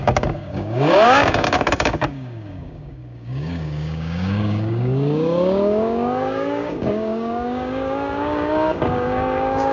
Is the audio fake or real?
fake